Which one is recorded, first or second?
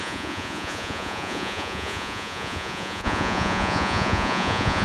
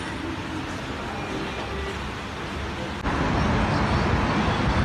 second